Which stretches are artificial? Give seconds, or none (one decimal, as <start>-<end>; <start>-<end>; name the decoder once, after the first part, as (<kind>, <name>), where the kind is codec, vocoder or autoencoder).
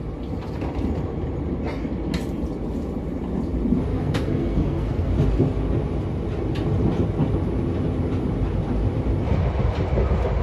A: 3.9-5.1 (codec, SNAC)